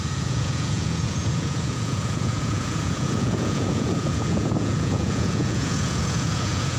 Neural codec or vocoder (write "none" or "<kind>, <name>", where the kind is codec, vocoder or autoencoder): vocoder, Vocos